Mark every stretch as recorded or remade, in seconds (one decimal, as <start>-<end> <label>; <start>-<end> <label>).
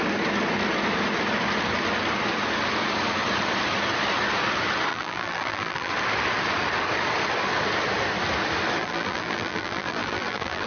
0.0-4.9 recorded; 4.9-5.9 remade; 5.9-8.8 recorded; 8.8-10.7 remade